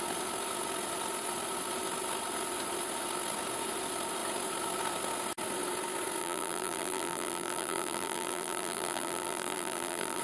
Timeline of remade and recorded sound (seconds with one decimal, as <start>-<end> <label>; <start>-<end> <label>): 0.0-6.2 recorded; 6.2-10.2 remade